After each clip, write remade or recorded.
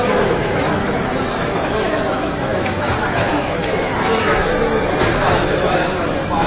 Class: remade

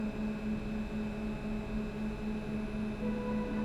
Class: recorded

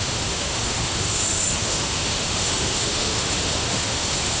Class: remade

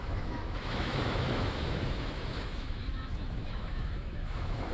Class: remade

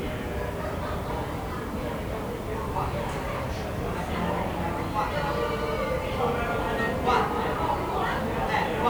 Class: recorded